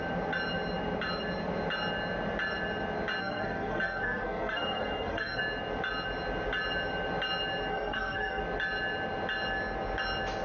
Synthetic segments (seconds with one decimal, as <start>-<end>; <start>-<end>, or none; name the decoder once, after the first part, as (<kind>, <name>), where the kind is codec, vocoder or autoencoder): 3.2-5.4 (codec, SNAC); 7.7-8.4